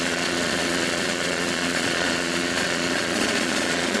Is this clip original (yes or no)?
no